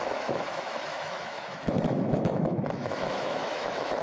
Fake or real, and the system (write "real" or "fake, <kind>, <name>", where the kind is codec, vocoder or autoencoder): fake, autoencoder, DAC-VAE